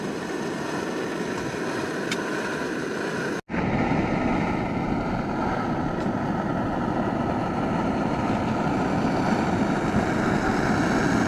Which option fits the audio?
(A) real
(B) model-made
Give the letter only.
A